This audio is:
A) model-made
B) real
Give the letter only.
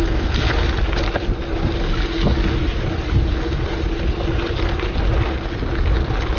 B